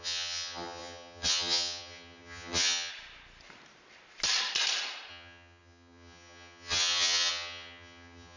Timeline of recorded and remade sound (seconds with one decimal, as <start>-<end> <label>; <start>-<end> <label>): 0.0-2.9 remade; 2.9-5.1 recorded; 5.1-8.4 remade